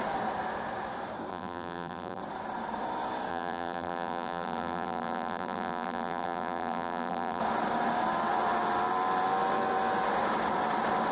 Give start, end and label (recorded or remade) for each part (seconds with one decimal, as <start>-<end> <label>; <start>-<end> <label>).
0.0-1.3 recorded; 1.3-2.2 remade; 2.2-3.3 recorded; 3.3-7.4 remade; 7.4-11.1 recorded